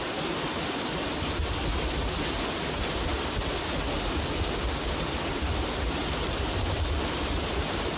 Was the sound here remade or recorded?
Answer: recorded